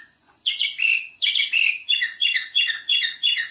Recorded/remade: remade